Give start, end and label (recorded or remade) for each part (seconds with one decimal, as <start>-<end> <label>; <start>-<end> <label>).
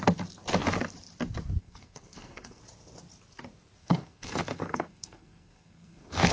0.0-1.6 recorded; 1.6-2.6 remade; 2.6-3.8 recorded; 3.8-6.3 remade